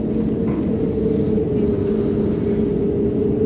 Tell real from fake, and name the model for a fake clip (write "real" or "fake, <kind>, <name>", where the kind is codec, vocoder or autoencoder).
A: real